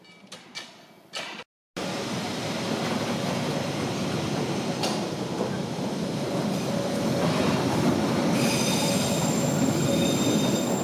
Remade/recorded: recorded